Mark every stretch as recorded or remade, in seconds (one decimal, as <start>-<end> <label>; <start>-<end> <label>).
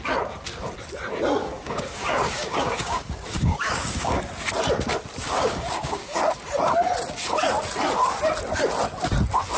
0.0-1.4 recorded; 1.4-4.2 remade; 4.2-5.2 recorded; 5.2-6.2 remade; 6.2-9.6 recorded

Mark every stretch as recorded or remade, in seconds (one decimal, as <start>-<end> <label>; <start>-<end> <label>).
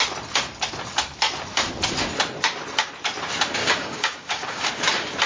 0.0-3.6 recorded; 3.6-4.7 remade; 4.7-5.3 recorded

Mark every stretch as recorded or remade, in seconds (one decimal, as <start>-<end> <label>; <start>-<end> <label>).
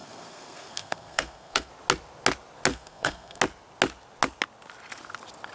0.0-1.7 remade; 1.7-2.7 recorded; 2.7-3.4 remade; 3.4-5.5 recorded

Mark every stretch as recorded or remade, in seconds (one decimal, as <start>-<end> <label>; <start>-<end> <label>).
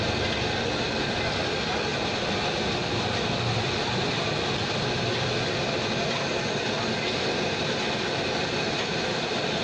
0.0-9.6 recorded